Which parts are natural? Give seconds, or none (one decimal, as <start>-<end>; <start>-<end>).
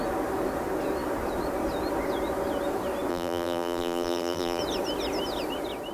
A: 0.0-3.1; 4.6-5.9